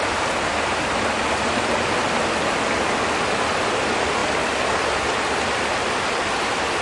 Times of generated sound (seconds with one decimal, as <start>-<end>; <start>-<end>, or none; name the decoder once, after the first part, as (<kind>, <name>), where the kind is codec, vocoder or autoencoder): none